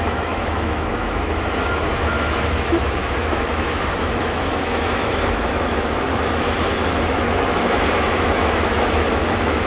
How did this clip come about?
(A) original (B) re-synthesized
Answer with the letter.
B